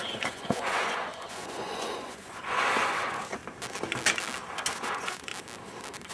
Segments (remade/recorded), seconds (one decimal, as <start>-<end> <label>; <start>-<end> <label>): 0.0-3.4 remade; 3.4-4.7 recorded; 4.7-5.3 remade; 5.3-6.1 recorded